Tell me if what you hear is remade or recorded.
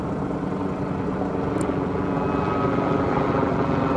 recorded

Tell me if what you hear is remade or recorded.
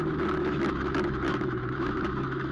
remade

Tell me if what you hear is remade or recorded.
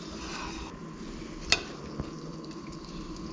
recorded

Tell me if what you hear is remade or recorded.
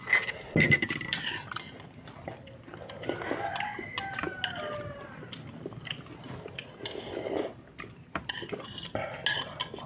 recorded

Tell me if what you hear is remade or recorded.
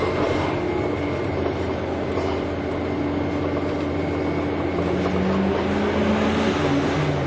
recorded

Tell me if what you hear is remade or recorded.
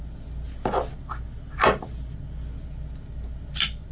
recorded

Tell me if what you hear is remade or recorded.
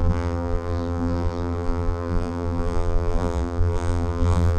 remade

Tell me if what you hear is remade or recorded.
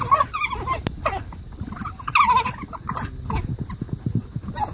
recorded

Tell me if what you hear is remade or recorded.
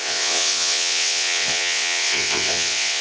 remade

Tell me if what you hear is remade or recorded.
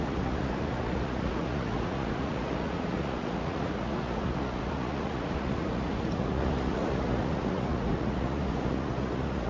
remade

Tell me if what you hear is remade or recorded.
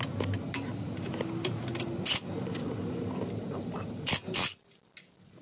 recorded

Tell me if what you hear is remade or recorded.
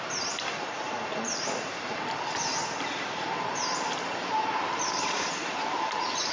remade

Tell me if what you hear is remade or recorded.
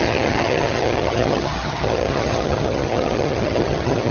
remade